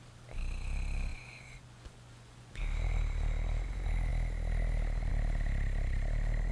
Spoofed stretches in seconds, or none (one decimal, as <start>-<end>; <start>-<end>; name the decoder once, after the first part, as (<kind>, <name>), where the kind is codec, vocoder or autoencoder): 1.1-2.5 (vocoder, Vocos)